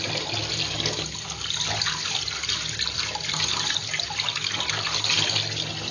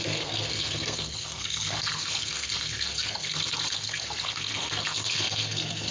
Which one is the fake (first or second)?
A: second